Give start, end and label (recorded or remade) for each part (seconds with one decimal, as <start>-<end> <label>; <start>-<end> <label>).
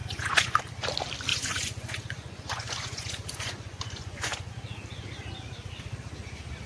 0.0-0.6 remade; 0.6-1.3 recorded; 1.3-4.5 remade; 4.5-6.7 recorded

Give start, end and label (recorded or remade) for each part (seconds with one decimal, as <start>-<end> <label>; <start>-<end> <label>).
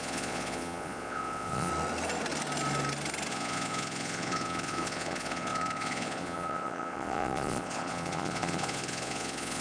0.0-1.7 remade; 1.7-3.3 recorded; 3.3-9.6 remade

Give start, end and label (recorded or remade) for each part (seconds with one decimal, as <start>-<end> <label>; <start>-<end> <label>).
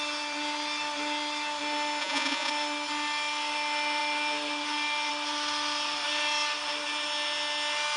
0.0-2.0 recorded; 2.0-2.5 remade; 2.5-8.0 recorded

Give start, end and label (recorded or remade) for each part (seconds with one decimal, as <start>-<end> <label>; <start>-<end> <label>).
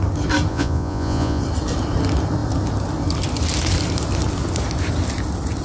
0.0-0.5 recorded; 0.5-1.4 remade; 1.4-5.6 recorded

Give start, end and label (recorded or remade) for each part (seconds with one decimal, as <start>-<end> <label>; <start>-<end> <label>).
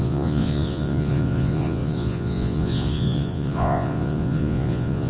0.0-5.1 remade